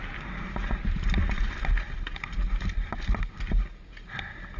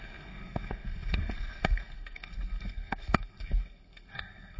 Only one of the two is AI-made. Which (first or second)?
second